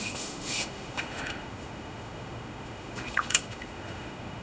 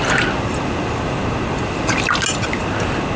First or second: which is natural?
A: second